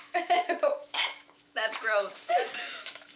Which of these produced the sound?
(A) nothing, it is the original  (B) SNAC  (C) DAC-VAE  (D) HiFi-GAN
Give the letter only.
C